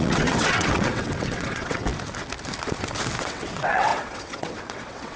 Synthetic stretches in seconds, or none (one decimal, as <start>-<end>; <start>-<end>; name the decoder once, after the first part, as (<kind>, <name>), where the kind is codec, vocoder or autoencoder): 0.0-1.9 (vocoder, WaveNeXt); 3.2-5.2